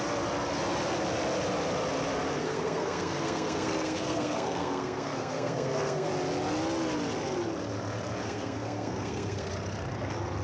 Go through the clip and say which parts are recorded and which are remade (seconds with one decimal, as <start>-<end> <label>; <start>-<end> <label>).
0.0-2.4 recorded; 2.4-6.1 remade; 6.1-8.2 recorded; 8.2-9.5 remade; 9.5-10.4 recorded